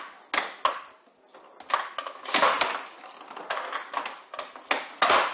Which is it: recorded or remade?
recorded